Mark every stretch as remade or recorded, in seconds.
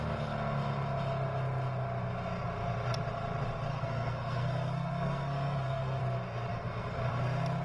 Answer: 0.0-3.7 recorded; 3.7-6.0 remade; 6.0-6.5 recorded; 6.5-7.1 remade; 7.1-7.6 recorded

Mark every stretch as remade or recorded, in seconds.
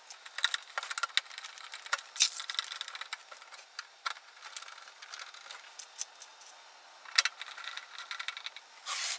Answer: 0.0-9.2 recorded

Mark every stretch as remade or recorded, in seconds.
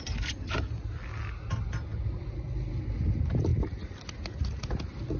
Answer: 0.0-5.2 recorded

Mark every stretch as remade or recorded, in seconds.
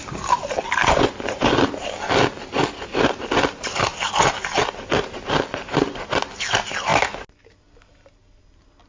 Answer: 0.0-8.9 recorded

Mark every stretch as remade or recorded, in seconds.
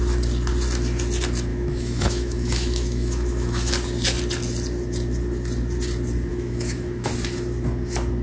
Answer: 0.0-1.5 recorded; 1.5-3.7 remade; 3.7-6.3 recorded; 6.3-7.1 remade; 7.1-8.2 recorded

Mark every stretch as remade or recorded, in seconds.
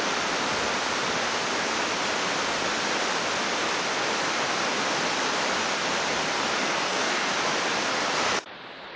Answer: 0.0-6.6 recorded; 6.6-7.3 remade; 7.3-9.0 recorded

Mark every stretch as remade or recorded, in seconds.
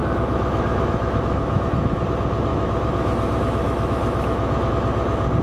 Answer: 0.0-2.0 remade; 2.0-2.5 recorded; 2.5-4.7 remade; 4.7-5.4 recorded